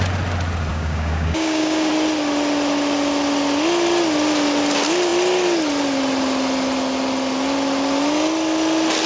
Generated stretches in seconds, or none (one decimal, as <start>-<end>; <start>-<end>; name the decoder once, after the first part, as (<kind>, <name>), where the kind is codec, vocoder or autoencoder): 0.7-1.9 (codec, DAC)